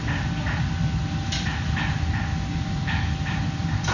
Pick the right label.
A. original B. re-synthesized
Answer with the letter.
A